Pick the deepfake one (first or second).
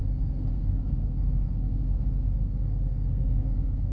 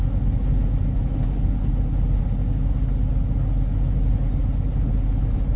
first